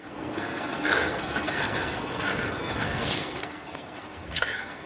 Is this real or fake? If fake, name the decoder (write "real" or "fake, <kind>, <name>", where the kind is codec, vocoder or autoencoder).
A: fake, codec, SNAC